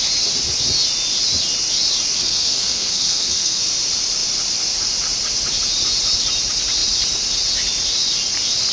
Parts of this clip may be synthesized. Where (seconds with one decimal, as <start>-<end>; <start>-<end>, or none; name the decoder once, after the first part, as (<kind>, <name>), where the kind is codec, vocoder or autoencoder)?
2.2-3.6 (codec, SNAC)